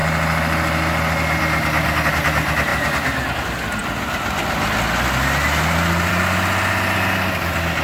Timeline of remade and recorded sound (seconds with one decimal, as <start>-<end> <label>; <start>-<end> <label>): 0.0-7.8 recorded

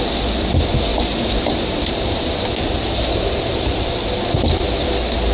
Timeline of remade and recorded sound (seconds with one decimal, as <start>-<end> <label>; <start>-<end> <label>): 0.0-0.9 recorded; 0.9-4.1 remade; 4.1-5.3 recorded

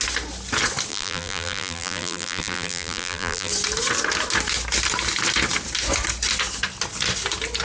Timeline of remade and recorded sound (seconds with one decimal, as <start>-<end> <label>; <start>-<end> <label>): 0.0-0.9 recorded; 0.9-3.5 remade; 3.5-7.6 recorded

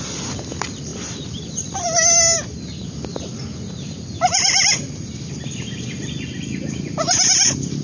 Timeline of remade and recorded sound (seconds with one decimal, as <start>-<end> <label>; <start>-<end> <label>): 0.0-7.8 remade

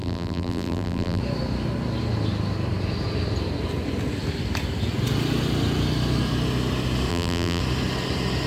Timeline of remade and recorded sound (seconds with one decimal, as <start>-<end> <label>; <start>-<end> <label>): 0.0-1.2 remade; 1.2-7.1 recorded; 7.1-7.6 remade; 7.6-8.5 recorded

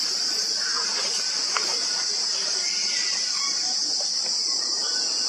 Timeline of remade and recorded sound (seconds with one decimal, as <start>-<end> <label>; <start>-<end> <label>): 0.0-5.3 remade